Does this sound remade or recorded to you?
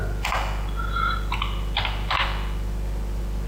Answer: recorded